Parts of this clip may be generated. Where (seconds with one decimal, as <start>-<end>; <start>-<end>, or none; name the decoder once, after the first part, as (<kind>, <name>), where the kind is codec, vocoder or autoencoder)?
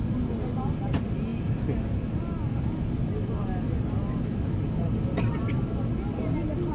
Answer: none